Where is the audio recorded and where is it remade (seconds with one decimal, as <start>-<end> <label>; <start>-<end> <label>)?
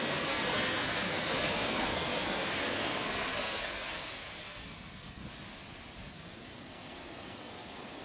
0.0-5.2 remade; 5.2-6.0 recorded; 6.0-8.0 remade